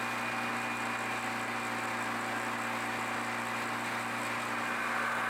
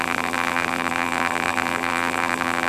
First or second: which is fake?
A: second